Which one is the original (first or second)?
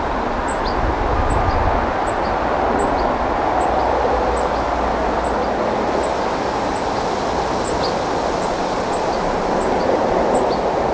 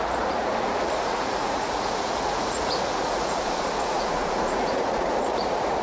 first